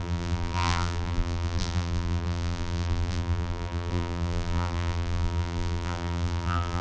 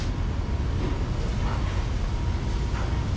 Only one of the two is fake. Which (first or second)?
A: first